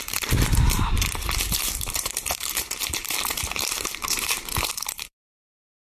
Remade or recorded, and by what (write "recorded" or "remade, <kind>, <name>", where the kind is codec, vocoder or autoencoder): remade, vocoder, BigVGAN v2